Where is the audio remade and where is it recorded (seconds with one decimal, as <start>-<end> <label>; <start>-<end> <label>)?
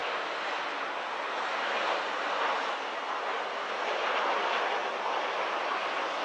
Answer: 0.0-6.2 recorded